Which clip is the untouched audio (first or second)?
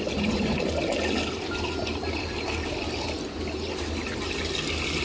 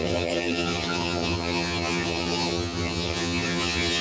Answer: first